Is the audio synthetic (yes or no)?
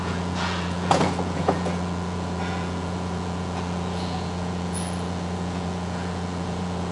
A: yes